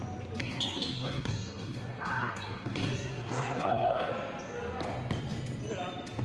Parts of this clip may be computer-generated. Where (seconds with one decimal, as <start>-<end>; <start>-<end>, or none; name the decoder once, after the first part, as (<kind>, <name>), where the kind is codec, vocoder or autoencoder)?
0.4-4.1 (codec, SNAC)